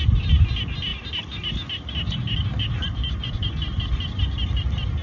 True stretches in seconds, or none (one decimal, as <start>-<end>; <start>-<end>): 0.0-5.0